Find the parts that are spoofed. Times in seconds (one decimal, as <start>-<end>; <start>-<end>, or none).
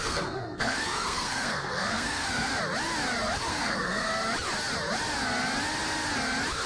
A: 0.0-2.5; 3.5-4.1